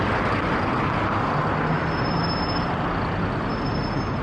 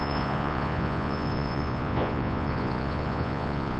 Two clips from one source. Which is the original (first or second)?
first